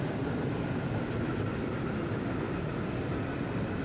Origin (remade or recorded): recorded